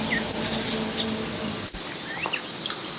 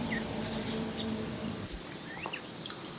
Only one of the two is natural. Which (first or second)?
first